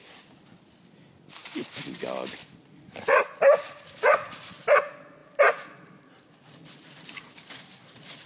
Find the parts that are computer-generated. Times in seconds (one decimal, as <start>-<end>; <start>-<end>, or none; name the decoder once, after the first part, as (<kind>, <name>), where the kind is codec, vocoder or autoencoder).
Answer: 1.4-4.6 (vocoder, BigVGAN v2); 5.2-7.5